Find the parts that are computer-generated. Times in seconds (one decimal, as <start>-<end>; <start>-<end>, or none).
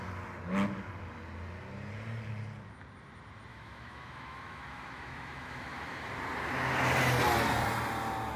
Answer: 3.5-6.1